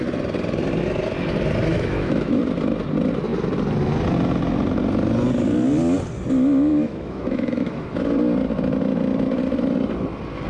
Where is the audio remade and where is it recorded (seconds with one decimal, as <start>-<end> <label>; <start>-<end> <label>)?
0.0-1.7 recorded; 1.7-2.4 remade; 2.4-6.7 recorded; 6.7-8.0 remade; 8.0-10.5 recorded